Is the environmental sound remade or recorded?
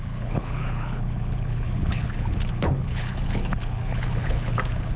remade